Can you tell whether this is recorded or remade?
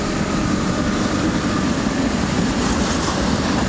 recorded